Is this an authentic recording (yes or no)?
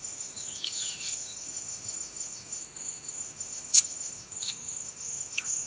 no